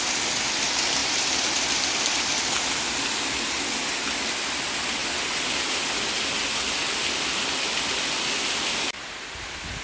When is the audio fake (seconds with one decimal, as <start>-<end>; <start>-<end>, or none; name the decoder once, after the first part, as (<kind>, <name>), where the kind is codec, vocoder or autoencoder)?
none